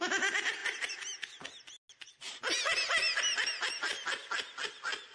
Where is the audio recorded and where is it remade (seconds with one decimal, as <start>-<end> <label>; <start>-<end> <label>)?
0.0-5.1 recorded